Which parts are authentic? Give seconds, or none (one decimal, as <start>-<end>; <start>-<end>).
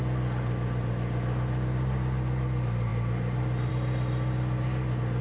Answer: 0.0-5.2